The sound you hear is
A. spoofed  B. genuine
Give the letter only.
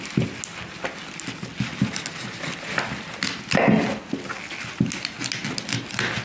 B